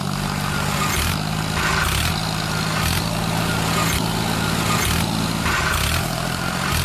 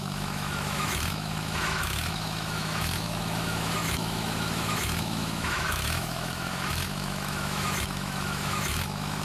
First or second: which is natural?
first